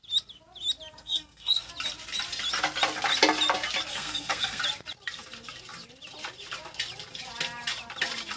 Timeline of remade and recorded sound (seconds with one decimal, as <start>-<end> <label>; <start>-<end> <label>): 0.0-0.9 recorded; 0.9-1.7 remade; 1.7-3.9 recorded; 3.9-4.6 remade; 4.6-8.4 recorded